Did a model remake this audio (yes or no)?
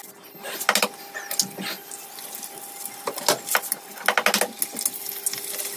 no